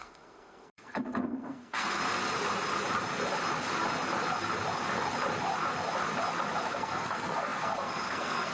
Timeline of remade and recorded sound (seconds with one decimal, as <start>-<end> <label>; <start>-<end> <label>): 0.0-2.0 remade; 2.0-6.6 recorded; 6.6-8.5 remade